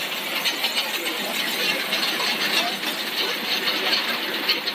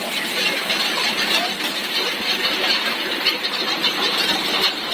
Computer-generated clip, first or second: second